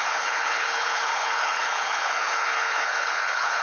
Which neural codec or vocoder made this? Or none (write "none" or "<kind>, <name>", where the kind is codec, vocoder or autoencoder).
codec, HILCodec